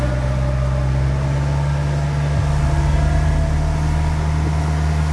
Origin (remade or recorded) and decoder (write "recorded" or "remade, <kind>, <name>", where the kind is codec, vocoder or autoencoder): recorded